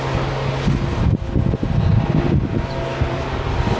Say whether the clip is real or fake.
real